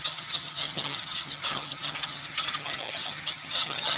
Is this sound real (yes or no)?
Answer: no